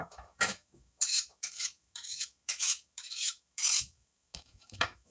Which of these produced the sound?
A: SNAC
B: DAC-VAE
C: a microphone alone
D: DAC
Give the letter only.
B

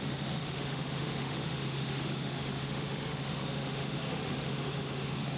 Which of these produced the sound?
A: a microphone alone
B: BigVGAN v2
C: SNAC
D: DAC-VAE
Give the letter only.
D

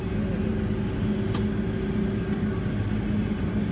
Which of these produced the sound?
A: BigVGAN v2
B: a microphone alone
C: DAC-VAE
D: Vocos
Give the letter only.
B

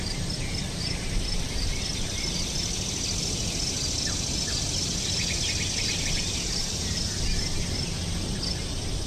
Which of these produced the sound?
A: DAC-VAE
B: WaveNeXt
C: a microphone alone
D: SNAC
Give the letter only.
C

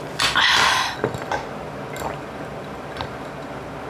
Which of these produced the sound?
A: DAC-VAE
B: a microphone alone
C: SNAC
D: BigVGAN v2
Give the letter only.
B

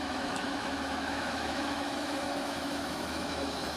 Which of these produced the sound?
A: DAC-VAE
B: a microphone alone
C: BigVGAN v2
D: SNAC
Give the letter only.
A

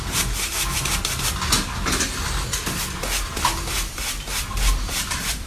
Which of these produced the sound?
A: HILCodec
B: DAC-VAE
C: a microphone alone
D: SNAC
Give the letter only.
C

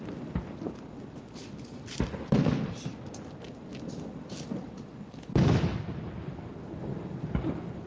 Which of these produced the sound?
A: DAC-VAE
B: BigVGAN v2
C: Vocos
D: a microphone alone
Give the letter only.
D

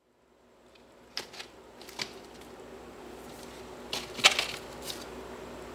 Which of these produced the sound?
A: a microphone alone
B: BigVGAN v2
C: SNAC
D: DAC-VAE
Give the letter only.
A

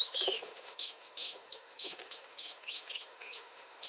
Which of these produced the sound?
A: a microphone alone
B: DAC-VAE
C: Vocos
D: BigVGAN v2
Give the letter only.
B